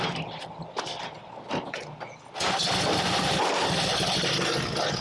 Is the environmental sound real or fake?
real